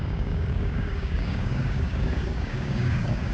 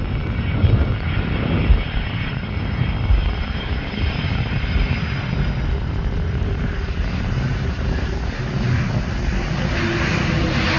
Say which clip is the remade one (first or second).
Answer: first